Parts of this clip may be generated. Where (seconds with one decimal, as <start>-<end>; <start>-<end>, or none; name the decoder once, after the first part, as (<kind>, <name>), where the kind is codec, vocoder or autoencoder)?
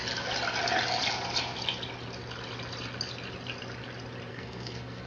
4.3-5.1 (codec, SNAC)